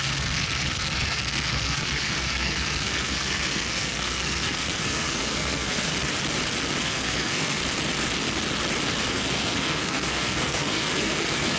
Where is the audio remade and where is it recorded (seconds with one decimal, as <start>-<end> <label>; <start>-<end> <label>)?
0.0-5.9 remade; 5.9-6.8 recorded; 6.8-7.6 remade; 7.6-9.1 recorded; 9.1-11.6 remade